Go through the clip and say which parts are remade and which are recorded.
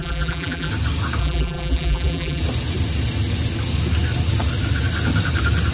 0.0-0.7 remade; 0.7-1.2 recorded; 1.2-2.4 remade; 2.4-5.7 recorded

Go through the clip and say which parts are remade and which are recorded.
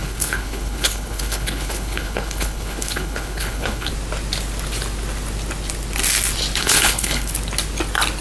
0.0-3.9 remade; 3.9-6.6 recorded; 6.6-7.3 remade; 7.3-8.2 recorded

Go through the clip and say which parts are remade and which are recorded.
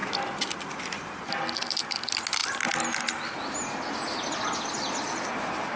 0.0-5.8 recorded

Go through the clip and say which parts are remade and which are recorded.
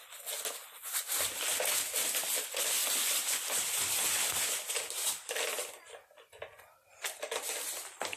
0.0-8.2 recorded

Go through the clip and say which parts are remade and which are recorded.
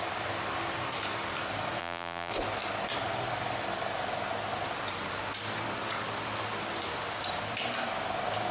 0.0-1.8 recorded; 1.8-2.3 remade; 2.3-8.5 recorded